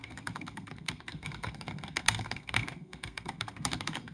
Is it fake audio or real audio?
fake